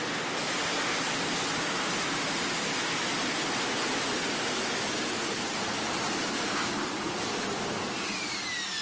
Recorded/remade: recorded